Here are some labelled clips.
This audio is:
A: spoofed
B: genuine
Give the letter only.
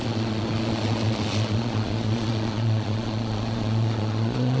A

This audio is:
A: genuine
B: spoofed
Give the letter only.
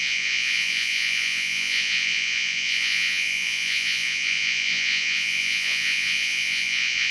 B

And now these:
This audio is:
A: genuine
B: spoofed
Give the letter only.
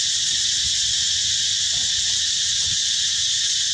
A